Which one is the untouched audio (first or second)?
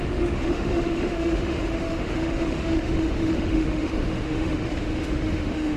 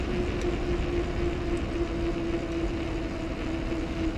second